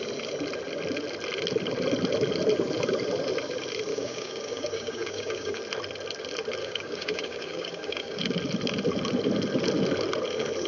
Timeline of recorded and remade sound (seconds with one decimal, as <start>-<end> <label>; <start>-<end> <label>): 0.0-3.9 recorded; 3.9-5.6 remade; 5.6-6.6 recorded; 6.6-8.2 remade; 8.2-10.7 recorded